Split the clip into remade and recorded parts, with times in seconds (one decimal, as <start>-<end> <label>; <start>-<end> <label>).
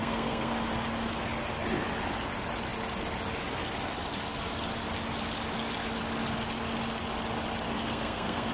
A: 0.0-0.5 remade; 0.5-7.8 recorded; 7.8-8.5 remade